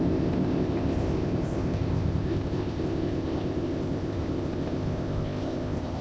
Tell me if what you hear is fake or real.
fake